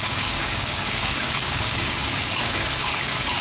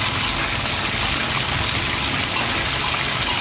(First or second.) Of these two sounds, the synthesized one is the first